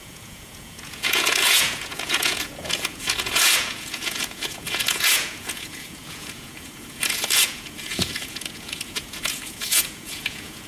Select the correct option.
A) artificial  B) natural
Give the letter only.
A